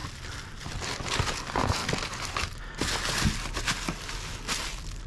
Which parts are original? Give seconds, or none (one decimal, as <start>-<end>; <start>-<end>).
0.0-5.1